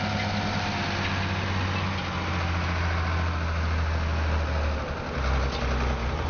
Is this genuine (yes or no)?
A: yes